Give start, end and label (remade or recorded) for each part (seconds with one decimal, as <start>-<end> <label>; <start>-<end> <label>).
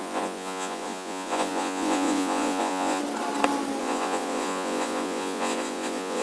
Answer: 0.0-3.0 remade; 3.0-3.8 recorded; 3.8-6.2 remade